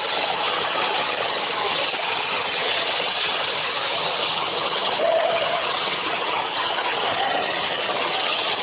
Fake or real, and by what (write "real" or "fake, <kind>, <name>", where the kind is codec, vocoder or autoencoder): fake, vocoder, HiFi-GAN